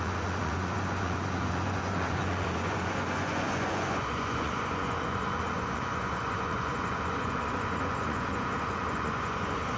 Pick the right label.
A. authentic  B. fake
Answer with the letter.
B